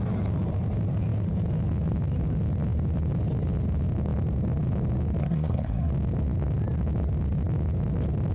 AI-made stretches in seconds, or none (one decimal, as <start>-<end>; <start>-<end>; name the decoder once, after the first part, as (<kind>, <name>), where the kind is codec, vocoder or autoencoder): 5.2-5.9 (codec, SNAC)